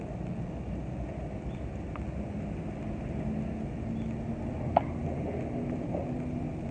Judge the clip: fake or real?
real